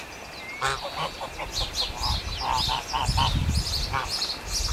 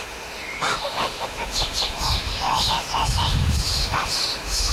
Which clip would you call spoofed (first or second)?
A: second